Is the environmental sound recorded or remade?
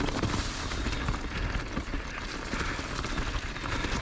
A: recorded